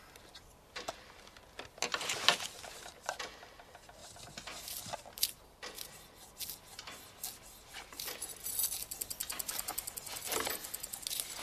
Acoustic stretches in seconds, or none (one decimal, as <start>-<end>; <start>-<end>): 0.0-11.4